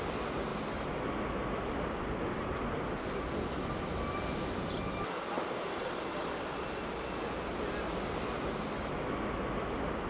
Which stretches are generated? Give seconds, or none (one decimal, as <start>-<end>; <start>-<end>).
none